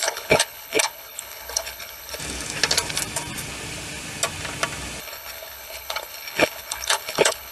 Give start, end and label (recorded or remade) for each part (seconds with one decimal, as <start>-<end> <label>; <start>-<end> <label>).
0.0-2.2 remade; 2.2-5.0 recorded; 5.0-7.5 remade